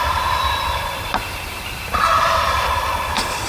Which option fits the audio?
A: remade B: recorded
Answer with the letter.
A